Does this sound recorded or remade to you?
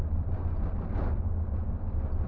recorded